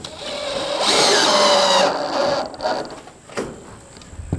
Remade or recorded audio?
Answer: recorded